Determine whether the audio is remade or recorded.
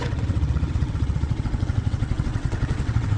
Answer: remade